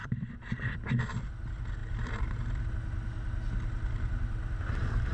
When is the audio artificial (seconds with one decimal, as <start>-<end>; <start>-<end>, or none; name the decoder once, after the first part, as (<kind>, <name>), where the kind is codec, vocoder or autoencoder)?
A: 0.0-1.2 (vocoder, BigVGAN v2); 1.8-2.7